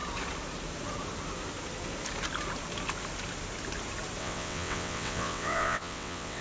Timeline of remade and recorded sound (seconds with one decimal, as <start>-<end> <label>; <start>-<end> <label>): 0.0-4.2 recorded; 4.2-6.4 remade